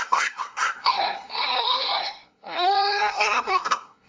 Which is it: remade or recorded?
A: remade